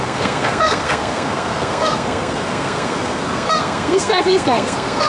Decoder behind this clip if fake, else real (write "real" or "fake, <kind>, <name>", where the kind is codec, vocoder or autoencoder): fake, codec, SNAC